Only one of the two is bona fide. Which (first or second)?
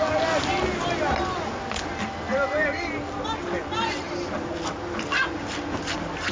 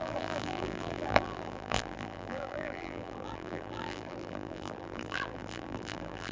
first